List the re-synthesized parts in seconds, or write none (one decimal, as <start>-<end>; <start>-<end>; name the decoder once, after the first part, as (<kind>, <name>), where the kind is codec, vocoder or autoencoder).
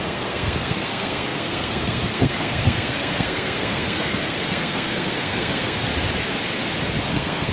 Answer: 0.0-5.9 (codec, SNAC); 7.1-7.5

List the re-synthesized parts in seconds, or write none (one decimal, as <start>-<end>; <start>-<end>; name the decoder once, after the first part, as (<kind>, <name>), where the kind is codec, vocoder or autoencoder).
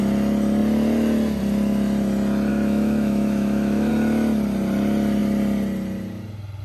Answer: 2.5-3.9 (autoencoder, DAC-VAE)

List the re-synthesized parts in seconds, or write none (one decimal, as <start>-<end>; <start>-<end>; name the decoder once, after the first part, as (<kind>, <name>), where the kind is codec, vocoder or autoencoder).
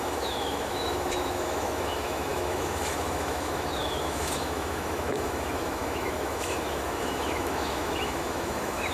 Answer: 0.0-8.9 (autoencoder, DAC-VAE)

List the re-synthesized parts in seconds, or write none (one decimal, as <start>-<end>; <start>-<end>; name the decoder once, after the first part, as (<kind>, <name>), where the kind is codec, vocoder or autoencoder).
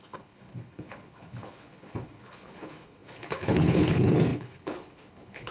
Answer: 0.0-5.5 (codec, HILCodec)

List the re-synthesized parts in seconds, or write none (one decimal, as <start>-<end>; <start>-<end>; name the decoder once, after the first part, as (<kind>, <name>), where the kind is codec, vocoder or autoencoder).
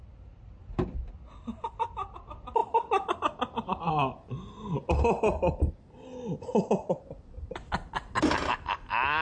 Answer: none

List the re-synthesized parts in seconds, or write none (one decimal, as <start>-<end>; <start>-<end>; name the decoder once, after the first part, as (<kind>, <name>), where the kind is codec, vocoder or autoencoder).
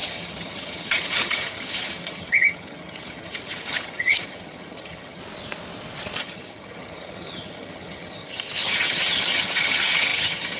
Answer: 0.0-5.2 (vocoder, HiFi-GAN); 6.2-10.6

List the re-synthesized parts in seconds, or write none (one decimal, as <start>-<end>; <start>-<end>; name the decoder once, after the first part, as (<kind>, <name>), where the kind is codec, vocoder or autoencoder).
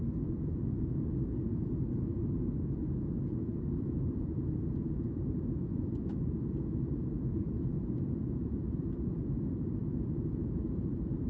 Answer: 0.0-11.3 (vocoder, Vocos)